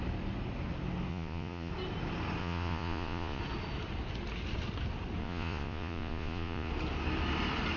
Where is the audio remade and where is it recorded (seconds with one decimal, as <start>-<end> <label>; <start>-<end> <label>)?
0.0-1.1 recorded; 1.1-1.7 remade; 1.7-2.4 recorded; 2.4-3.4 remade; 3.4-5.2 recorded; 5.2-6.7 remade; 6.7-7.8 recorded